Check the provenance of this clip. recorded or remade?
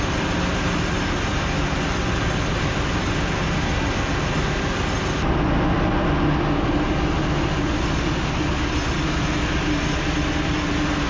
recorded